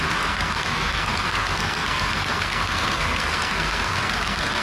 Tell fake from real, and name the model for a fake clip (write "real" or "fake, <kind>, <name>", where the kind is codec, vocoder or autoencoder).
fake, codec, SNAC